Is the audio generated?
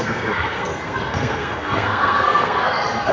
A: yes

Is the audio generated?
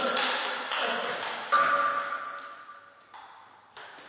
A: no